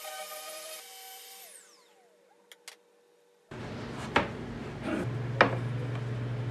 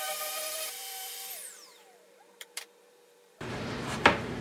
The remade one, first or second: second